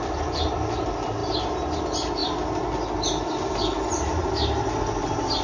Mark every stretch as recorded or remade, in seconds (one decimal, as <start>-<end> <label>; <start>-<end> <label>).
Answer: 0.0-5.4 recorded